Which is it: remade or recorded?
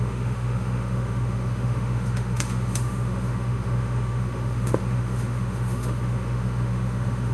remade